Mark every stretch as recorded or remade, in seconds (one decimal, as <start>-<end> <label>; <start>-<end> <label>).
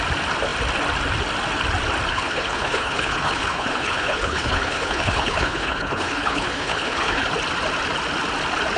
0.0-2.1 recorded; 2.1-7.3 remade; 7.3-8.8 recorded